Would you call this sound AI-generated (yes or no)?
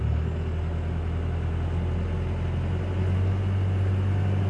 no